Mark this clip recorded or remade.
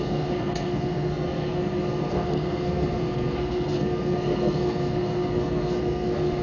remade